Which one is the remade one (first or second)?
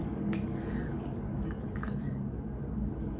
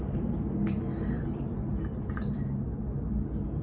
first